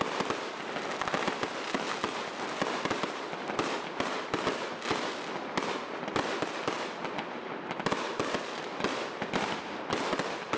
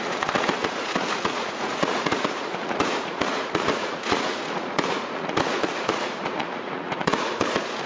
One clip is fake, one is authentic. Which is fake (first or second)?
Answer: second